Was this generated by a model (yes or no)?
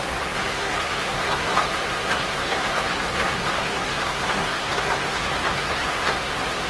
yes